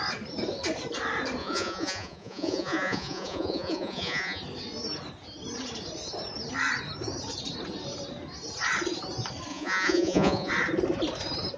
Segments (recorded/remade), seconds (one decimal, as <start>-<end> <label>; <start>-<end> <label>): 0.0-1.4 recorded; 1.4-4.4 remade; 4.4-9.5 recorded; 9.5-10.5 remade; 10.5-11.6 recorded